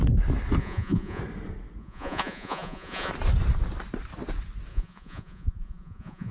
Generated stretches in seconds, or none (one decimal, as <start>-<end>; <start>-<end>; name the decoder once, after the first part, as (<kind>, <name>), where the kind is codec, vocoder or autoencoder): 0.6-1.2 (vocoder, Vocos); 1.8-3.1; 4.7-6.3